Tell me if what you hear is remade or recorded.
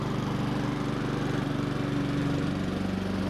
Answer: recorded